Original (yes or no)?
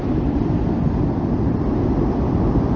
no